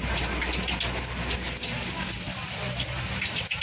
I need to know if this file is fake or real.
real